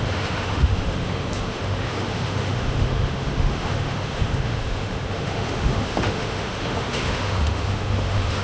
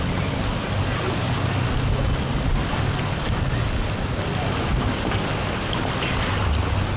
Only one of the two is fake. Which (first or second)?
first